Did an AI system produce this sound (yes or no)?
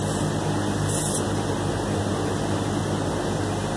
no